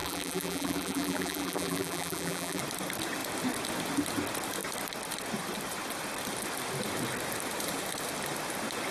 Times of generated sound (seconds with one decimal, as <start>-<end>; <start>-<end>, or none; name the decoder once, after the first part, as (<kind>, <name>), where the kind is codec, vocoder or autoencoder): 0.0-2.6 (vocoder, BigVGAN v2)